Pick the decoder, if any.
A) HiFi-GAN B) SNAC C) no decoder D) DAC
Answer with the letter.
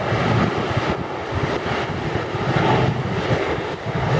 C